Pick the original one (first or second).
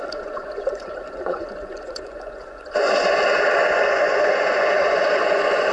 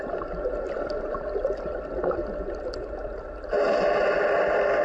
second